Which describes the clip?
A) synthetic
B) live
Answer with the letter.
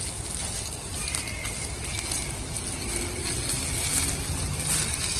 B